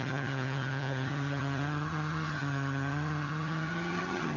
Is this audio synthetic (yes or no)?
yes